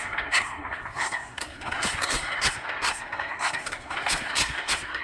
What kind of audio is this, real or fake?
fake